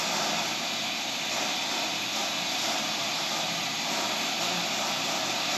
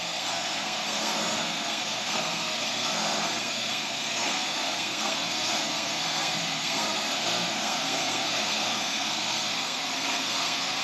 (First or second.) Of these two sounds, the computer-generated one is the second